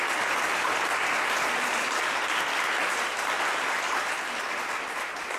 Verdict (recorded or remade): recorded